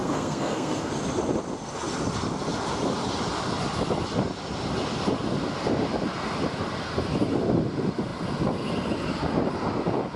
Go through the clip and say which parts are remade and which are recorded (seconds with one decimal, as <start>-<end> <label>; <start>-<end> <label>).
0.0-0.9 remade; 0.9-10.2 recorded